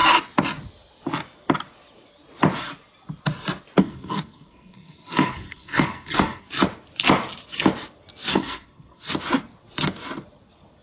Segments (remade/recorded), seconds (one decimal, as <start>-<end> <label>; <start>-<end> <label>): 0.0-3.8 recorded; 3.8-6.5 remade; 6.5-8.3 recorded; 8.3-9.1 remade; 9.1-10.8 recorded